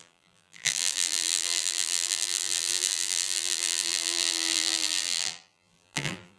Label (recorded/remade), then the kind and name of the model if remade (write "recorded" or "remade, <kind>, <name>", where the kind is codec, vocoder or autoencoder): remade, vocoder, BigVGAN v2